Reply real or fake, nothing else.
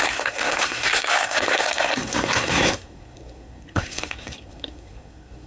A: fake